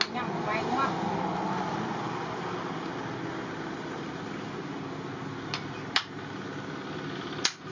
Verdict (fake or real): real